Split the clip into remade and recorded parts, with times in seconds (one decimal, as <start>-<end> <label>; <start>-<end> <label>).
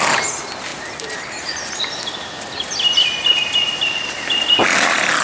0.0-5.2 recorded